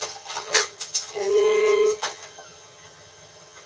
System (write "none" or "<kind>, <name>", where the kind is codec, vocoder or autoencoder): vocoder, HiFi-GAN